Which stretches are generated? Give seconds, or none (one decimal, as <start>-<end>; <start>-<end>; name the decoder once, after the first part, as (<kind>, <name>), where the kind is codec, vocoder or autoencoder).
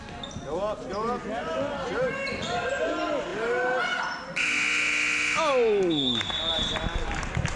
3.3-4.0 (vocoder, BigVGAN v2); 5.5-6.8